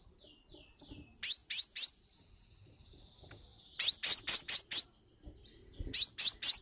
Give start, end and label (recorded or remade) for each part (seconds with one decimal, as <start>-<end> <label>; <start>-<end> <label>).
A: 0.0-6.6 recorded